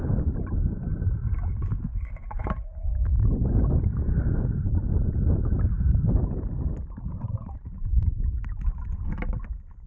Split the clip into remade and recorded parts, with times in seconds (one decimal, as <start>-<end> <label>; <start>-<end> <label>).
0.0-4.2 recorded; 4.2-9.2 remade; 9.2-9.9 recorded